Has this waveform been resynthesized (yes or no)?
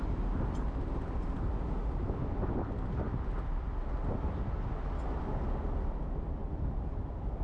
no